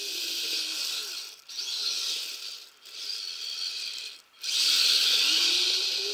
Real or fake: real